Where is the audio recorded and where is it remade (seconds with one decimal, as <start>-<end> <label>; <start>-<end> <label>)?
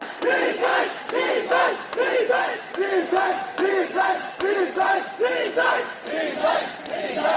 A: 0.0-0.7 remade; 0.7-2.3 recorded; 2.3-7.4 remade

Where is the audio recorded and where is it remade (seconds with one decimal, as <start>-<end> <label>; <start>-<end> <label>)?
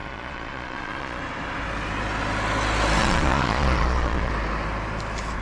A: 0.0-1.2 remade; 1.2-3.0 recorded; 3.0-4.3 remade; 4.3-5.4 recorded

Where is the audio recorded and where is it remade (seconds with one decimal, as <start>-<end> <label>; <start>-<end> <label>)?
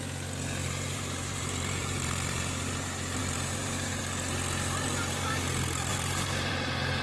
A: 0.0-0.6 recorded; 0.6-2.4 remade; 2.4-3.2 recorded; 3.2-4.0 remade; 4.0-5.9 recorded; 5.9-6.5 remade; 6.5-7.0 recorded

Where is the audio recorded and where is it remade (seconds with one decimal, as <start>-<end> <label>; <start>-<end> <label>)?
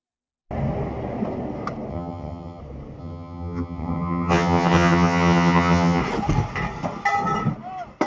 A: 0.0-1.9 recorded; 1.9-2.6 remade; 2.6-3.0 recorded; 3.0-6.0 remade; 6.0-8.1 recorded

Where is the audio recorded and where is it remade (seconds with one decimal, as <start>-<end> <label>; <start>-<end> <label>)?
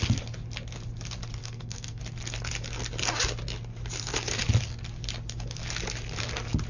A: 0.0-1.4 recorded; 1.4-2.0 remade; 2.0-6.7 recorded